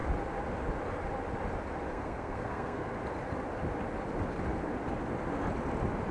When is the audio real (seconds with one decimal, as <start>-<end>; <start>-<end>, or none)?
0.0-1.9; 2.9-6.1